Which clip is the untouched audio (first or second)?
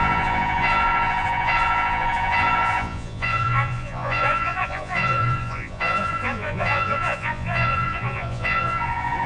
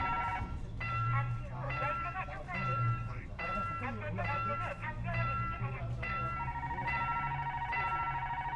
second